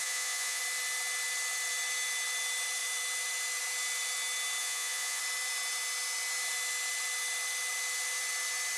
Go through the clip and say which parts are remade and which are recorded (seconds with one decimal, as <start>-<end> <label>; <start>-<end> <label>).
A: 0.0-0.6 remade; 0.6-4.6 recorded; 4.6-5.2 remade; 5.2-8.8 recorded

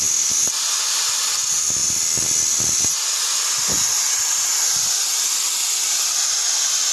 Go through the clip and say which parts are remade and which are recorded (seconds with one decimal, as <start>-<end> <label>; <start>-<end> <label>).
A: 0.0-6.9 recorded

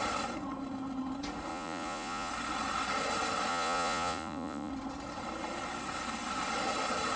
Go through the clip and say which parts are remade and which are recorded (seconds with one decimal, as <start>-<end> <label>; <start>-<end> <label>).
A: 0.0-1.5 recorded; 1.5-2.3 remade; 2.3-3.5 recorded; 3.5-4.7 remade; 4.7-7.2 recorded